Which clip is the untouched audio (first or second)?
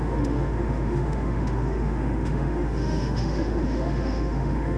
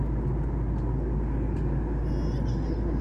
second